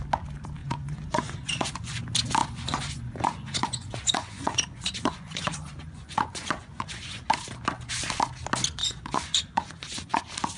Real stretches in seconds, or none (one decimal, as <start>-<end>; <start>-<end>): 0.0-0.6; 2.0-2.4; 7.3-8.8; 10.2-10.6